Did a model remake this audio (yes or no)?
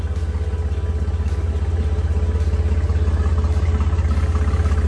no